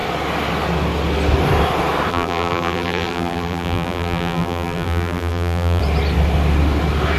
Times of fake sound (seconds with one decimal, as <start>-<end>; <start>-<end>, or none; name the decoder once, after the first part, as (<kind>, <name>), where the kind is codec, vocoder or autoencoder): 2.1-5.8 (vocoder, BigVGAN v2)